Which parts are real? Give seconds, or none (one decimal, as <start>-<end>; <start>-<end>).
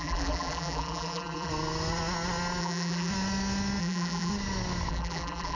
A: 1.5-2.6; 3.1-3.8; 4.3-4.9